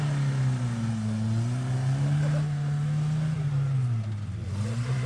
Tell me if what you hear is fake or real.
real